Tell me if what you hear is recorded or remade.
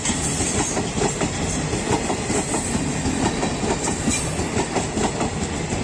recorded